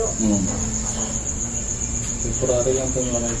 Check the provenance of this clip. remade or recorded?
recorded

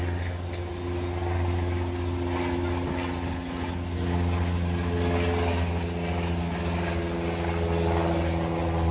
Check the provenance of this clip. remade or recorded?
recorded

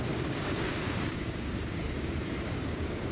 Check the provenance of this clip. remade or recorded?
remade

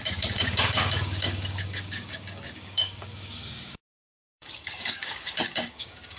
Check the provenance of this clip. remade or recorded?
remade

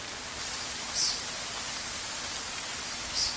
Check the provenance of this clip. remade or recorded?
recorded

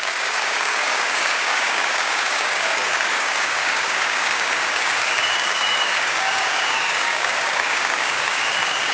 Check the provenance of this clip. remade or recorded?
remade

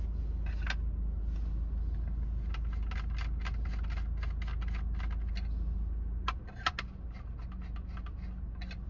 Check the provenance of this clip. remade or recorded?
recorded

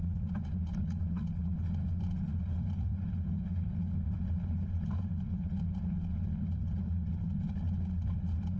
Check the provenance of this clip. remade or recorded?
recorded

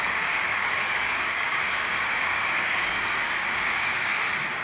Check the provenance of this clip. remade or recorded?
remade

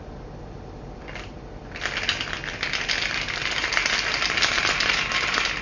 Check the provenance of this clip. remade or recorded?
recorded